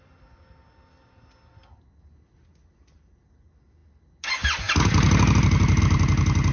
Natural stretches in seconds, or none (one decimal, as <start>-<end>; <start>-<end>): 0.0-6.5